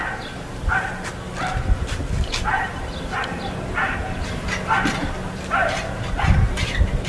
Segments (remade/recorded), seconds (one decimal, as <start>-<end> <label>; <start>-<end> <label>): 0.0-7.1 recorded